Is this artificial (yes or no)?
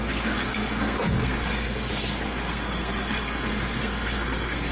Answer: yes